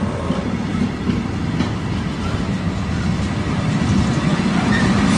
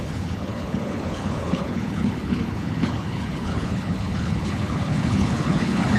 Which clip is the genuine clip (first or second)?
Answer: first